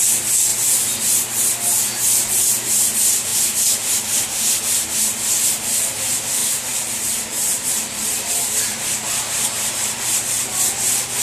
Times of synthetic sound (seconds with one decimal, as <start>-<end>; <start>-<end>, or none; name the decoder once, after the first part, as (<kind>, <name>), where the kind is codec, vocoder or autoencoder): 6.4-10.6 (vocoder, BigVGAN v2)